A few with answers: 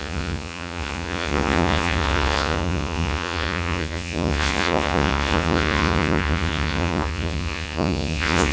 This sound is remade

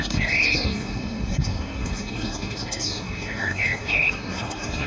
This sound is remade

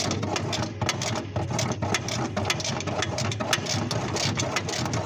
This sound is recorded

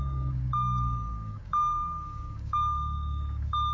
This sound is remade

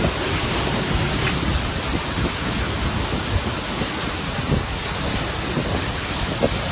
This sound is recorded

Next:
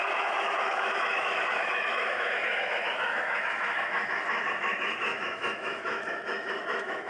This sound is remade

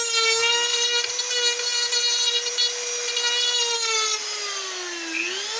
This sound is recorded